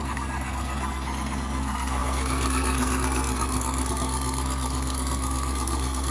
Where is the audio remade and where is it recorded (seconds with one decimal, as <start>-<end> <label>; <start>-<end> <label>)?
0.0-6.1 remade

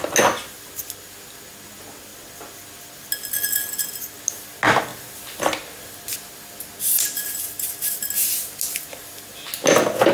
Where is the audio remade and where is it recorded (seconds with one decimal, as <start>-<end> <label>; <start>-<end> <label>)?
0.0-10.1 recorded

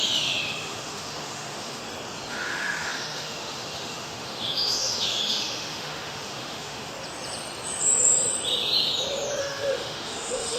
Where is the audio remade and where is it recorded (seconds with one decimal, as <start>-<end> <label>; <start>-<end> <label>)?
0.0-1.8 remade; 1.8-2.3 recorded; 2.3-6.9 remade; 6.9-9.4 recorded; 9.4-10.6 remade

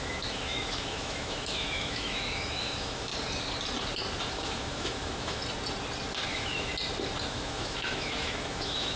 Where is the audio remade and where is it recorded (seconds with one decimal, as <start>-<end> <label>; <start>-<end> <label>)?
0.0-3.1 remade; 3.1-4.3 recorded; 4.3-5.4 remade; 5.4-6.3 recorded; 6.3-6.7 remade; 6.7-7.3 recorded; 7.3-9.0 remade